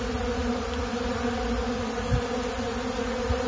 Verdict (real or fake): real